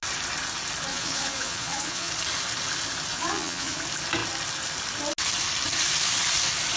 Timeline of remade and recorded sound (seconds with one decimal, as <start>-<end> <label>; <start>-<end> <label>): 0.0-0.9 recorded; 0.9-2.1 remade; 2.1-3.1 recorded; 3.1-3.8 remade; 3.8-6.8 recorded